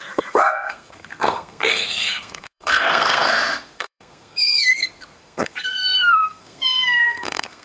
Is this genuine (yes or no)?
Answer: no